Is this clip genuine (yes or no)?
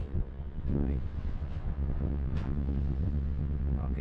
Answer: no